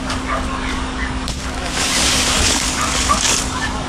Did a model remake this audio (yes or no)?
yes